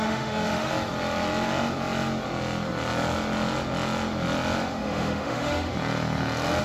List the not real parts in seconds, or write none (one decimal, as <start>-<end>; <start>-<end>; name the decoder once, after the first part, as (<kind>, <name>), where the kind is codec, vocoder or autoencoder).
0.0-0.7 (autoencoder, DAC-VAE); 4.7-5.7